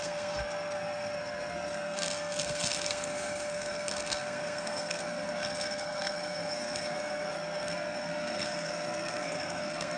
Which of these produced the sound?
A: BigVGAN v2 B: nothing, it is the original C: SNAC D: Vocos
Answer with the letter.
C